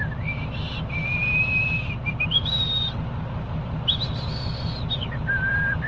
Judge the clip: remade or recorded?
remade